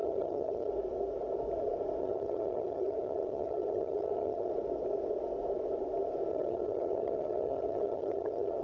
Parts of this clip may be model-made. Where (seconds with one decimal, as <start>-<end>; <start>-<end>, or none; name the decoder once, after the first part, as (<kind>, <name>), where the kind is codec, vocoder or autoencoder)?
0.0-0.7 (vocoder, HiFi-GAN); 2.0-4.5; 6.3-8.6